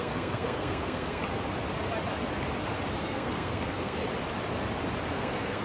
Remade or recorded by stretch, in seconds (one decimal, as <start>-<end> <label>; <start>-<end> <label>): 0.0-1.2 remade; 1.2-3.0 recorded; 3.0-4.0 remade; 4.0-5.1 recorded; 5.1-5.6 remade